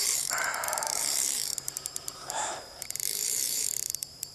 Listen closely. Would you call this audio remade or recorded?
remade